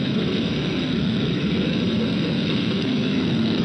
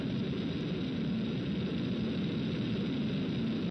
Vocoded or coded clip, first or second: first